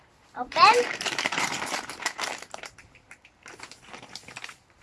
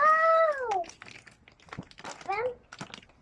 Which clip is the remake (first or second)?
first